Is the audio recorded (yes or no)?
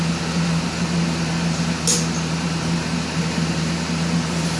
yes